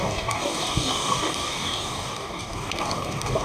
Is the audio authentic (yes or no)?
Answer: no